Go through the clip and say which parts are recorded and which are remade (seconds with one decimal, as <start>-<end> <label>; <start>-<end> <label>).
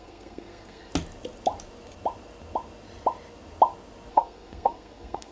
0.0-0.9 remade; 0.9-4.1 recorded; 4.1-5.3 remade